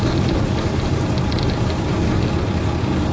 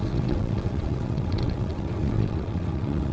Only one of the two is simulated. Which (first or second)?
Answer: second